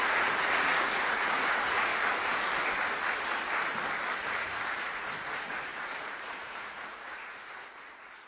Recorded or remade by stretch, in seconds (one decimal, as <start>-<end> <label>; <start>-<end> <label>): 0.0-1.9 remade; 1.9-4.2 recorded; 4.2-8.3 remade